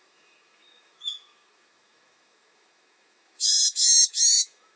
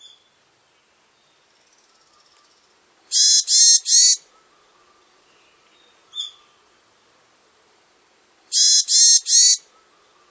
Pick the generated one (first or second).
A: first